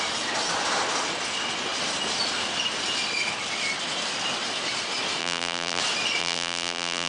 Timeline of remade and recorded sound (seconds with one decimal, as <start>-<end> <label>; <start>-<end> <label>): 0.0-5.2 recorded; 5.2-5.8 remade; 5.8-6.2 recorded; 6.2-7.1 remade